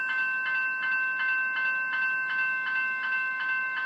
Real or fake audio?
real